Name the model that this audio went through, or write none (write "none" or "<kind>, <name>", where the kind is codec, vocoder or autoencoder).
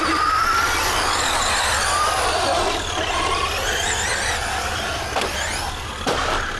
vocoder, BigVGAN v2